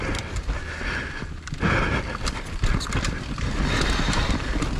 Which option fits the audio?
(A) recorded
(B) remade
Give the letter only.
A